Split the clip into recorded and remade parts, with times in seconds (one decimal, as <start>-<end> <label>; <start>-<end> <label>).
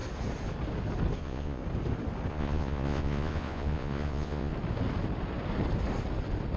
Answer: 0.0-1.2 recorded; 1.2-1.6 remade; 1.6-2.3 recorded; 2.3-4.5 remade; 4.5-6.6 recorded